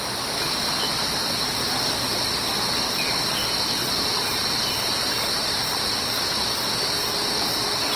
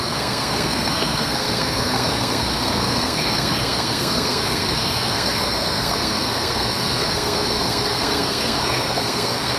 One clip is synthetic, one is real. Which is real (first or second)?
first